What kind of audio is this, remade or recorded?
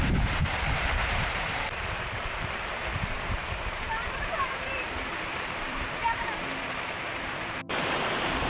remade